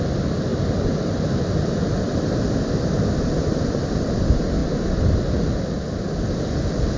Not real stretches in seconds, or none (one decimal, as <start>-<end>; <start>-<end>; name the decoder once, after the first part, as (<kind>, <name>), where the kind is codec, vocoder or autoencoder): none